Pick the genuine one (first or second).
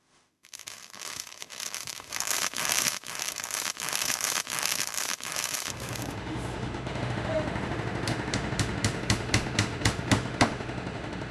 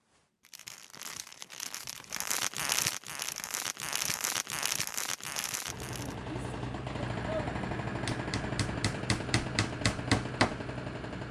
second